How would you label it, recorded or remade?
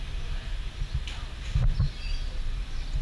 recorded